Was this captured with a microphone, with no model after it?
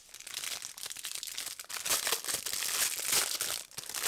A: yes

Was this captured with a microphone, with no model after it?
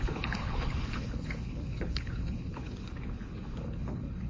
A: no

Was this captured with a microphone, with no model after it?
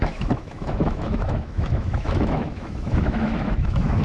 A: no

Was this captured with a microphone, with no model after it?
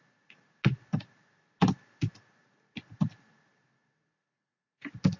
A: yes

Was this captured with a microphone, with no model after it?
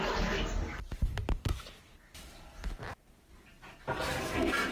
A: yes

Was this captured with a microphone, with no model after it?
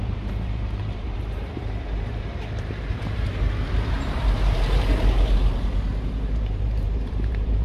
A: no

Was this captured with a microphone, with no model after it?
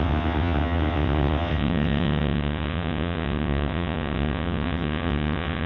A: no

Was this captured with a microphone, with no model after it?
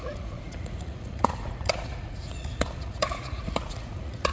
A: no